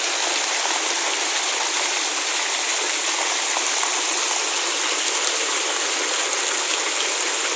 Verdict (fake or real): real